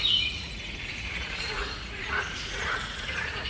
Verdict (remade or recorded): remade